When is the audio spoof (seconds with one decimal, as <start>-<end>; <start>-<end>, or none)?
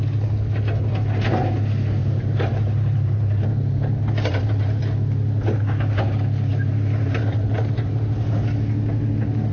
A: 2.0-4.8; 6.5-8.0